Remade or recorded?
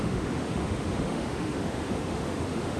remade